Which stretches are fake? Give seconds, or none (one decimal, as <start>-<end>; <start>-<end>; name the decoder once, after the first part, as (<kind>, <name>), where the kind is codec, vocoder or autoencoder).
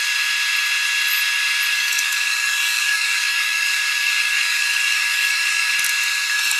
1.7-5.7 (codec, DAC)